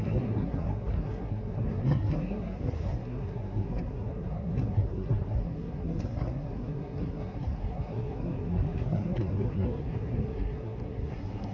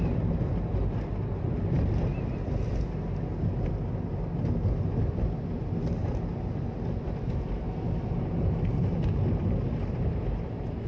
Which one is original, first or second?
second